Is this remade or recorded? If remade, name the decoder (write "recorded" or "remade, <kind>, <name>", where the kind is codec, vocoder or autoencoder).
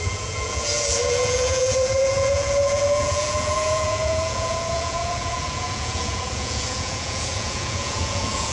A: remade, vocoder, Vocos